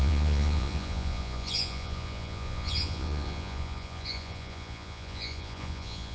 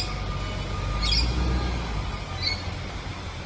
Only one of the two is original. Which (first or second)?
second